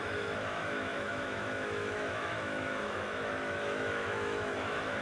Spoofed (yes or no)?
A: yes